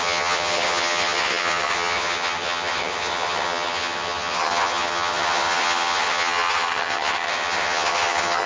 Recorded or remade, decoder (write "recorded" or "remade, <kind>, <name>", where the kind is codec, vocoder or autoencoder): remade, vocoder, HiFi-GAN